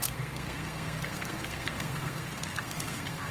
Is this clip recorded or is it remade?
remade